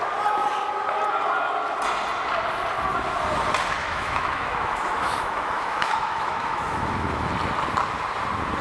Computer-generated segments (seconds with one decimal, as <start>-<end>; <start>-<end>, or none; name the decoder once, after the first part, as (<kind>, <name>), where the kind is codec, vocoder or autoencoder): 3.8-7.3 (autoencoder, DAC-VAE)